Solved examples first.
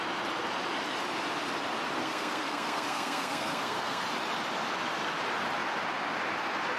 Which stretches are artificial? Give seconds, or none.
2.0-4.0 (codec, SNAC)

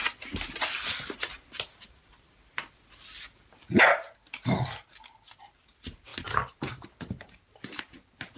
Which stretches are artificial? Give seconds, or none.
none

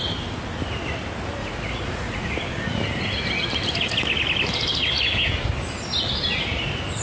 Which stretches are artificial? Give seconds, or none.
1.4-2.3 (vocoder, Vocos)

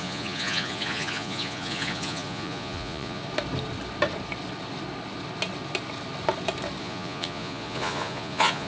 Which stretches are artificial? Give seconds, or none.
0.0-3.2 (vocoder, Vocos); 6.8-8.7

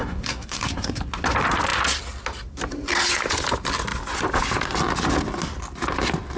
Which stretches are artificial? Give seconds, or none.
0.0-1.0 (codec, SNAC)

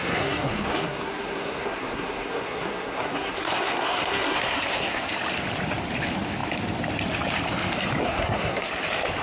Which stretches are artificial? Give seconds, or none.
0.0-5.1 (codec, SNAC); 8.0-8.7